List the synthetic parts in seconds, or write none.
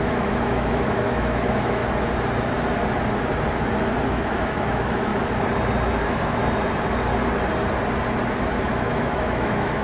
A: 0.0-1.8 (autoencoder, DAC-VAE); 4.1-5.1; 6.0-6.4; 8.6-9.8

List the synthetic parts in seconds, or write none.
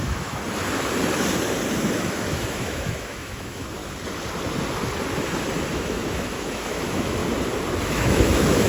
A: 0.0-0.4 (autoencoder, DAC-VAE); 1.8-3.8; 5.7-7.2; 7.8-8.7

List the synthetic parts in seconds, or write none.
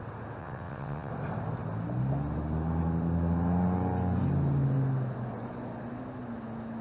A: 0.4-1.1 (vocoder, WaveNeXt)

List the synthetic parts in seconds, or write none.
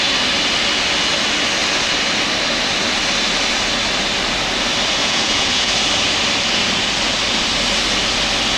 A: 5.0-5.7 (vocoder, Vocos)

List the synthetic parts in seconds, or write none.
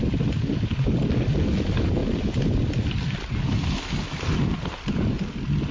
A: none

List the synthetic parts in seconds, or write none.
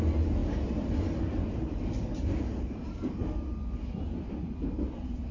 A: none